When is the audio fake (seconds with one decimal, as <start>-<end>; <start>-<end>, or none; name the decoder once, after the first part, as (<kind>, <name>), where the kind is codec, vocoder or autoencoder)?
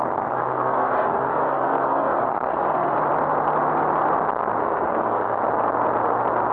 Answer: 0.0-3.0 (codec, SNAC); 4.6-5.4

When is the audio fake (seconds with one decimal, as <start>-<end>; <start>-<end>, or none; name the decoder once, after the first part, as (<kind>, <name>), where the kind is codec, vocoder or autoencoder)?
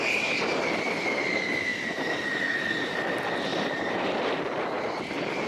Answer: 1.7-2.4 (vocoder, BigVGAN v2); 3.5-4.4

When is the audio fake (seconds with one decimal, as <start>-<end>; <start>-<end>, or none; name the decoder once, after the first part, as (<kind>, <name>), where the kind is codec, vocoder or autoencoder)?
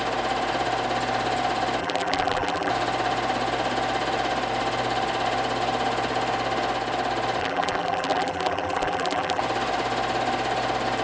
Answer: 1.8-2.7 (vocoder, BigVGAN v2); 7.4-9.4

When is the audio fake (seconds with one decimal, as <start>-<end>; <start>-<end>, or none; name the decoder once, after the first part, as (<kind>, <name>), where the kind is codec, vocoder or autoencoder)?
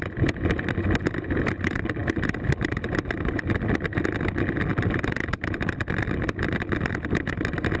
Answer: none